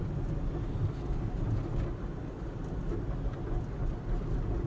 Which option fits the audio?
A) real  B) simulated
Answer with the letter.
A